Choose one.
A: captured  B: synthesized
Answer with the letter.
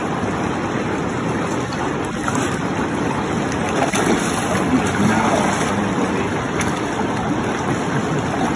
A